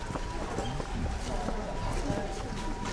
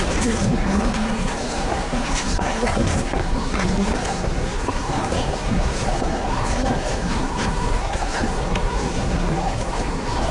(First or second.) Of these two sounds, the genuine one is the first